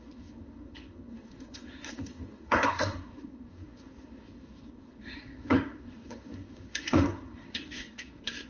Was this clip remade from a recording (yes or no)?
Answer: yes